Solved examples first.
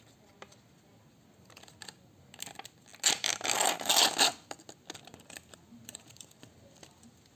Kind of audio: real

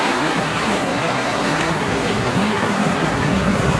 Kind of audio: fake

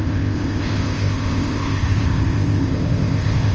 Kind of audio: fake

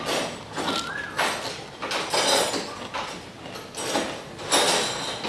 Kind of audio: real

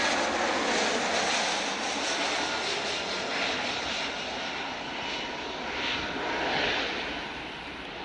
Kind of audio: real